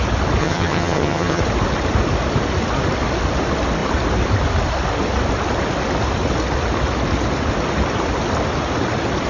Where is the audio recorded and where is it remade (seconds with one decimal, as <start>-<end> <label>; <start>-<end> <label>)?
0.0-0.4 recorded; 0.4-1.4 remade; 1.4-9.3 recorded